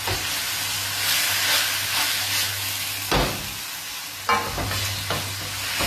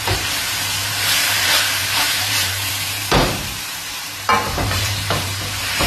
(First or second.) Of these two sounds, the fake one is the second